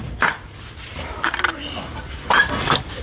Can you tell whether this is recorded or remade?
recorded